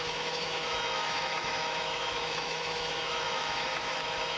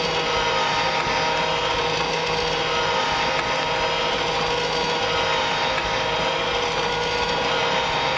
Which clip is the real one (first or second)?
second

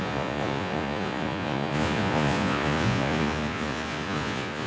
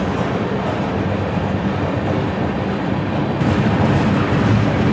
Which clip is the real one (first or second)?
second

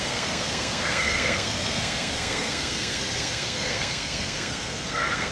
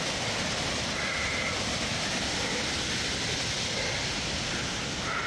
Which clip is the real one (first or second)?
second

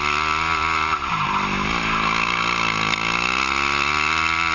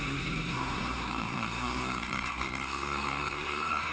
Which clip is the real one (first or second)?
first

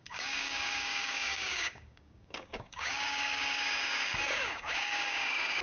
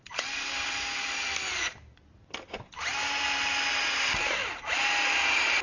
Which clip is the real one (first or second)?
second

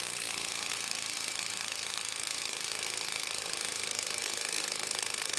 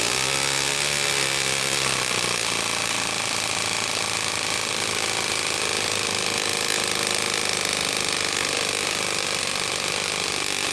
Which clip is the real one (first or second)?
second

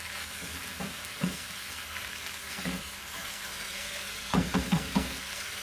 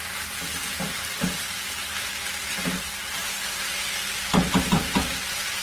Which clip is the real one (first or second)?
second